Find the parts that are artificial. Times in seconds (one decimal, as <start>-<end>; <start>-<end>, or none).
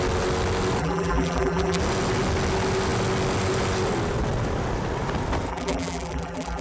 0.8-1.8; 5.5-6.6